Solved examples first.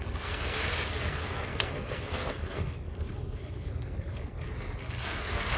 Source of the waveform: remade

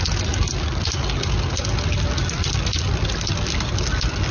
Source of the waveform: recorded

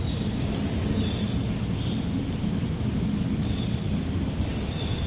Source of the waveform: recorded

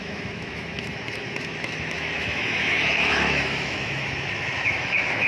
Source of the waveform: remade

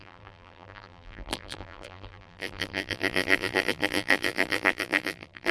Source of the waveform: remade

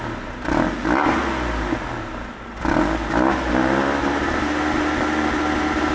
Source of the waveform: recorded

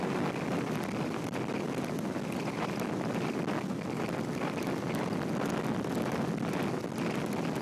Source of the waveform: recorded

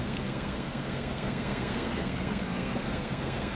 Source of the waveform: remade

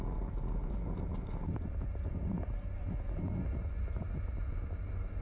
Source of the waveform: recorded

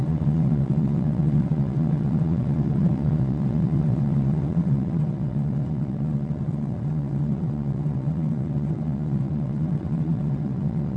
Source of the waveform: remade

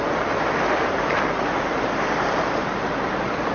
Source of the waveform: recorded